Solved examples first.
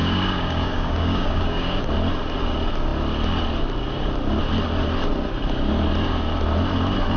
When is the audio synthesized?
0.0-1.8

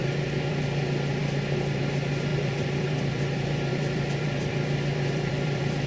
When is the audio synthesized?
0.0-0.6; 2.3-5.9